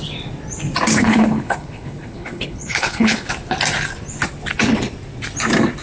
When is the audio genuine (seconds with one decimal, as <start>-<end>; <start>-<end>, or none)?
0.0-0.9; 3.3-5.8